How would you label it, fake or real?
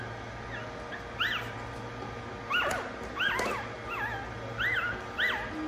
real